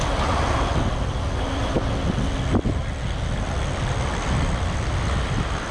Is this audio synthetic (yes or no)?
no